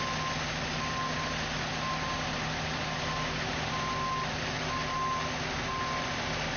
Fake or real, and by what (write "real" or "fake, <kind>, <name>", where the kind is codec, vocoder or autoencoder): real